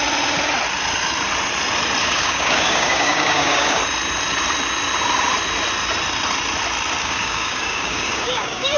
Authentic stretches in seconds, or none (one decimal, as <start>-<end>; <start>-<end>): 0.0-2.0; 3.8-7.0